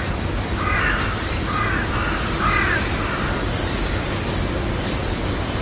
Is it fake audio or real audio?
real